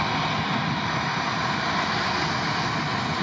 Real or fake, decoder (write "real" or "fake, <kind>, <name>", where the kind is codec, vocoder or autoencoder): real